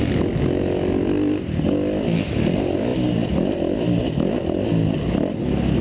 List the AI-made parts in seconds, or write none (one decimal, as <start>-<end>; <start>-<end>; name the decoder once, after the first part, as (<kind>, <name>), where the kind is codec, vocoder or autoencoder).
none

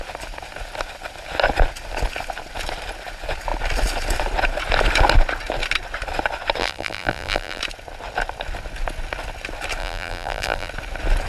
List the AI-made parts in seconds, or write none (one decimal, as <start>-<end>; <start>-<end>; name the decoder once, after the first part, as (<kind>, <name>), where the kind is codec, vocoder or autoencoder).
6.6-7.6 (vocoder, BigVGAN v2); 9.8-10.7

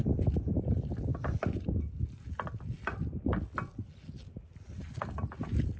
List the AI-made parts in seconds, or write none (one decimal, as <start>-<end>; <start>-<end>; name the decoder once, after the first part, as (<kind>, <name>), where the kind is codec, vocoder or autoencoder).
none

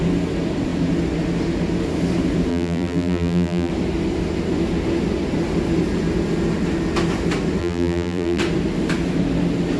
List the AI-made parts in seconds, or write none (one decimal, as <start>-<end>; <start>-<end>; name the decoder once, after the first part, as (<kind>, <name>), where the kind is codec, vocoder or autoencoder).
2.5-3.7 (vocoder, BigVGAN v2); 7.6-8.4

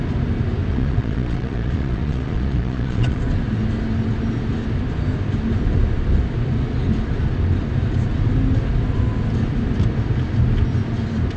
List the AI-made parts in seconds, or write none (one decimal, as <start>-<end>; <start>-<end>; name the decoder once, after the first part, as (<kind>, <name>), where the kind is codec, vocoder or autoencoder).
0.7-3.2 (vocoder, Vocos)